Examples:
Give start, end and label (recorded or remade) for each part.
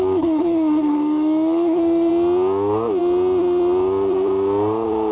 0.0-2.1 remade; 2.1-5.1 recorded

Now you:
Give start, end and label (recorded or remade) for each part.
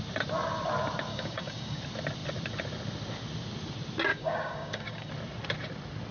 0.0-1.1 recorded; 1.1-1.8 remade; 1.8-4.1 recorded; 4.1-5.1 remade; 5.1-6.1 recorded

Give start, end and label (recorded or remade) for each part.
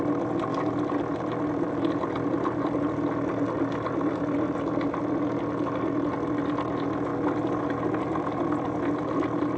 0.0-9.6 recorded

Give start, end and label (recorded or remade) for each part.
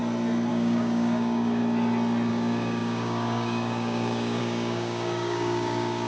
0.0-0.5 recorded; 0.5-1.6 remade; 1.6-2.3 recorded; 2.3-6.1 remade